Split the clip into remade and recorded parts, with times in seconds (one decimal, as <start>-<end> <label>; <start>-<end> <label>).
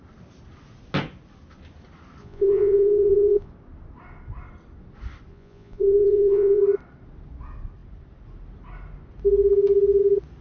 0.0-2.2 recorded; 2.2-3.5 remade; 3.5-5.3 recorded; 5.3-6.6 remade; 6.6-10.4 recorded